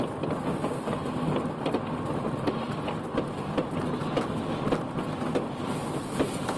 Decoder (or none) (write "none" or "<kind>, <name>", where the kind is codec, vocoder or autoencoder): none